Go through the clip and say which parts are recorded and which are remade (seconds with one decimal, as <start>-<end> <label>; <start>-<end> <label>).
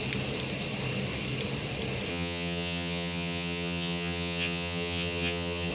0.0-2.1 recorded; 2.1-5.7 remade